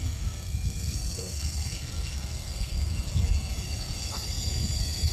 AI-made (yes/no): yes